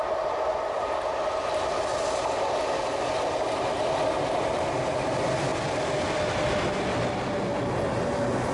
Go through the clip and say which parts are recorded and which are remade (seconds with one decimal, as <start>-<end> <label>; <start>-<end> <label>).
0.0-8.5 recorded